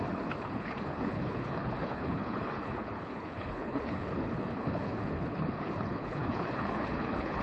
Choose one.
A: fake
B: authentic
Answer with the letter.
A